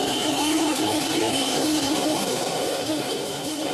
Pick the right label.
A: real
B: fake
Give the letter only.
B